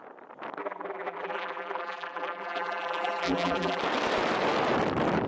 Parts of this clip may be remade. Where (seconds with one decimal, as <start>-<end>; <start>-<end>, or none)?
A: 0.6-3.8